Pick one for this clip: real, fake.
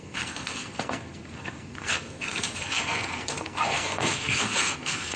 fake